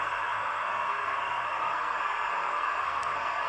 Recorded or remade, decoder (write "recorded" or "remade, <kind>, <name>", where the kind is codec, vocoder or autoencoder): remade, codec, SNAC